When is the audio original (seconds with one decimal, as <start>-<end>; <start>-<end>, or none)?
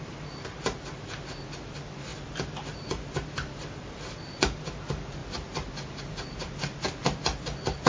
0.0-7.9